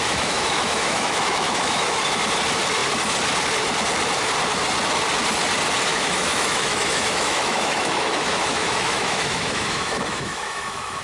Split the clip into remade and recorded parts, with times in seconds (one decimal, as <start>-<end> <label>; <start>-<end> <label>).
0.0-2.0 remade; 2.0-5.9 recorded; 5.9-11.0 remade